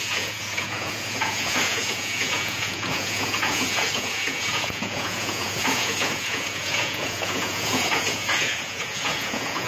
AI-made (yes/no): yes